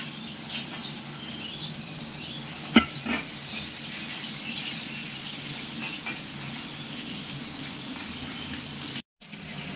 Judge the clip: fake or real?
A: real